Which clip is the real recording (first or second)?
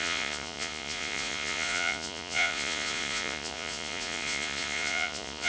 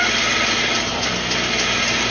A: second